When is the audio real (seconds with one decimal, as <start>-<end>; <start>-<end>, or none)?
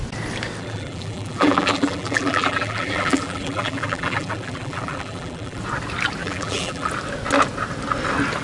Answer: 0.0-0.6; 5.6-6.2; 6.9-8.4